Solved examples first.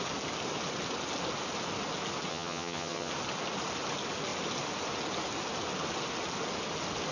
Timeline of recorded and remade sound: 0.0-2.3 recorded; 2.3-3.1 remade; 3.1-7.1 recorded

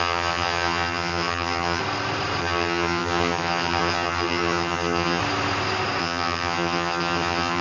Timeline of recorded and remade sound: 0.0-1.8 remade; 1.8-2.4 recorded; 2.4-5.2 remade; 5.2-6.0 recorded; 6.0-7.6 remade